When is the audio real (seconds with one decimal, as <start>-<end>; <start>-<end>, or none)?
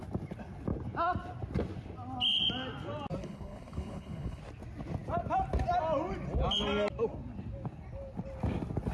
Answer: 0.0-3.2; 4.4-8.9